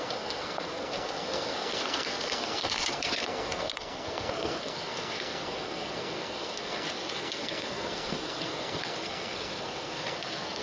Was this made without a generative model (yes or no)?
no